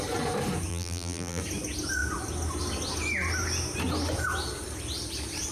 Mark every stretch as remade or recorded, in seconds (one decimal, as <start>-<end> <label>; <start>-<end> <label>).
0.0-0.7 recorded; 0.7-1.4 remade; 1.4-5.5 recorded